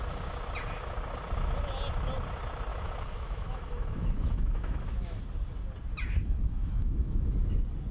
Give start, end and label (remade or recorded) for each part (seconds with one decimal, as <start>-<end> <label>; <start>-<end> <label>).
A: 0.0-2.7 recorded; 2.7-5.2 remade; 5.2-6.2 recorded; 6.2-7.5 remade; 7.5-7.9 recorded